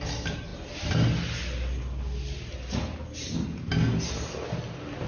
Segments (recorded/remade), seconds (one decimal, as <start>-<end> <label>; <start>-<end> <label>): 0.0-5.1 recorded